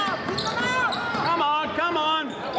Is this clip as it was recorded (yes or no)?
yes